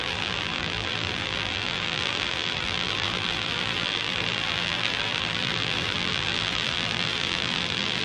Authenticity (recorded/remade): remade